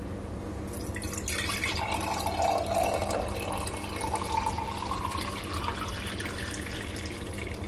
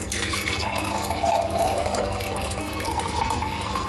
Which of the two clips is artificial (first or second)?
second